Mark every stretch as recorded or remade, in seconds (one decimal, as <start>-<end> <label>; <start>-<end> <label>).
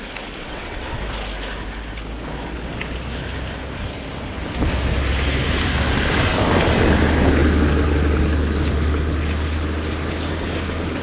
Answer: 0.0-0.4 recorded; 0.4-1.0 remade; 1.0-11.0 recorded